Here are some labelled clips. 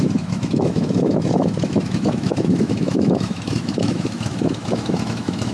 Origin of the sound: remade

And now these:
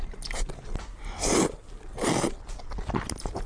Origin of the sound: recorded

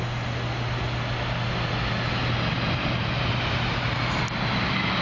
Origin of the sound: recorded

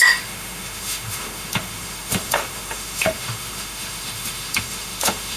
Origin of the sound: remade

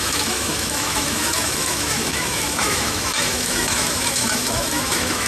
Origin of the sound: remade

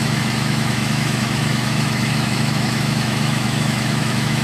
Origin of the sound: remade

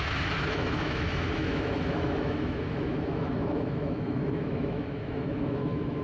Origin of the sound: remade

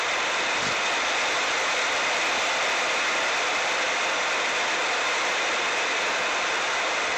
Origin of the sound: recorded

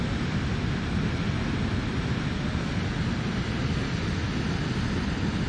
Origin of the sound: recorded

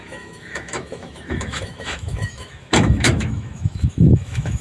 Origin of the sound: remade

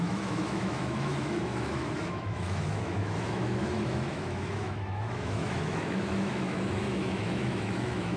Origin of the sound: remade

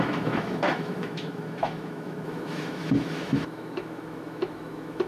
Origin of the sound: remade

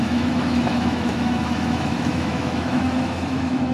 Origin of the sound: remade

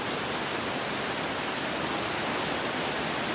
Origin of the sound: recorded